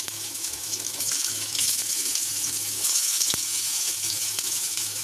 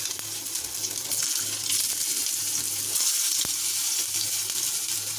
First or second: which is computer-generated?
first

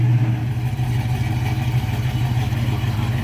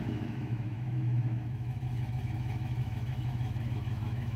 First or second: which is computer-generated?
second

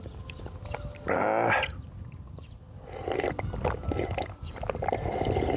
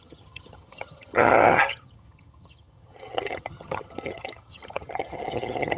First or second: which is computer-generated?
second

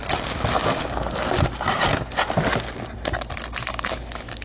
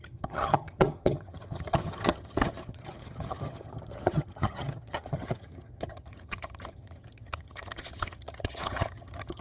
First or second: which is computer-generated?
second